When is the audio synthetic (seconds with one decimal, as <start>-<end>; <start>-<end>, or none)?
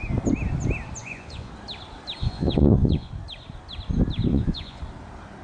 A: 1.0-1.5; 2.2-3.1; 4.3-4.8